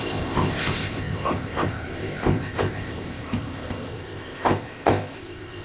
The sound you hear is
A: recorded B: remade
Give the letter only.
B